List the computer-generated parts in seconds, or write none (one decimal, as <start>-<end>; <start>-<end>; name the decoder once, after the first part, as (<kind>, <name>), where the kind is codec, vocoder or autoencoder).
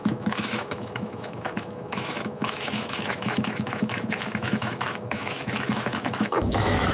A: 0.0-6.9 (autoencoder, DAC-VAE)